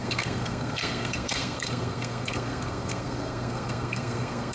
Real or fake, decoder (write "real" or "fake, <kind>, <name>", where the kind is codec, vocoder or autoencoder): fake, codec, SNAC